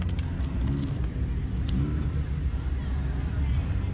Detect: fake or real real